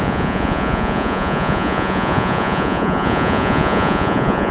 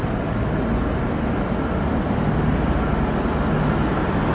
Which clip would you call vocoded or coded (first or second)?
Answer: first